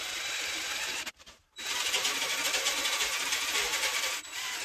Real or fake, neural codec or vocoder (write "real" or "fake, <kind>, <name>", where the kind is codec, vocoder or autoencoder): fake, vocoder, BigVGAN v2